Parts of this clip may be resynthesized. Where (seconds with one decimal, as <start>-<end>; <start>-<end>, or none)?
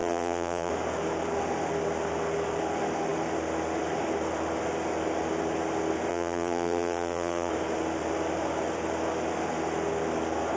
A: 0.0-0.7; 6.1-7.5